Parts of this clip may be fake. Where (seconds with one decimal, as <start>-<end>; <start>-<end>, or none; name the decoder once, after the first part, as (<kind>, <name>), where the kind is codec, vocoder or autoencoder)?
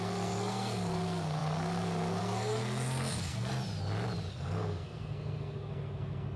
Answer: 0.0-3.5 (codec, SNAC); 4.3-6.4